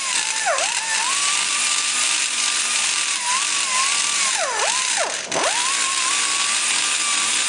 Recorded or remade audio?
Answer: recorded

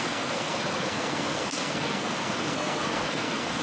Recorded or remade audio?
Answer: remade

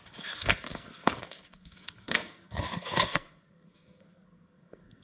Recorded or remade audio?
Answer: remade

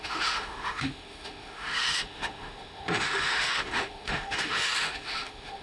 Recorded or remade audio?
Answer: remade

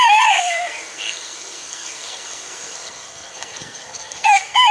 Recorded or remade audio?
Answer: remade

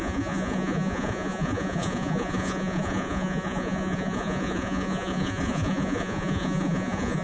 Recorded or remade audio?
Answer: remade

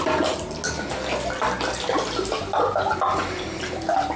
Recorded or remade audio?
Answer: recorded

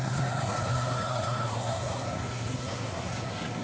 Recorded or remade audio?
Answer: remade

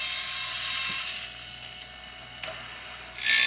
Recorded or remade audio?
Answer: recorded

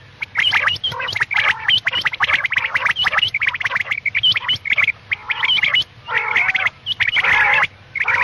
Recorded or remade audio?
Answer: recorded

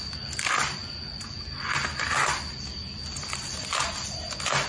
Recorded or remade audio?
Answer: recorded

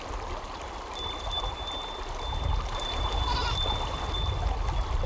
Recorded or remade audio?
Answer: recorded